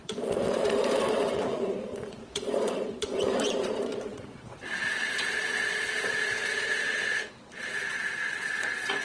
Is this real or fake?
fake